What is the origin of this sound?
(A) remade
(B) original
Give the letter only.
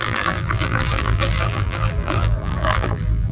A